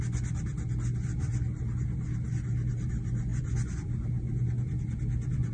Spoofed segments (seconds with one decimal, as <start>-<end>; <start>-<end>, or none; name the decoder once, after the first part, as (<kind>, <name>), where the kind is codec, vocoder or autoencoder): none